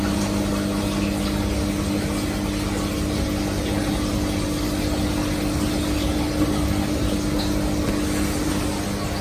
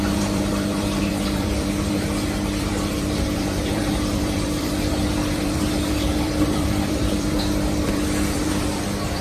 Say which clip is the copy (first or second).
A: second